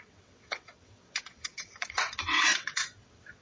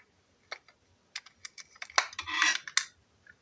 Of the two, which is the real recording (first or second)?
second